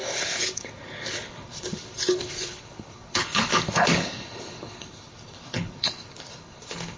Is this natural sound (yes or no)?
no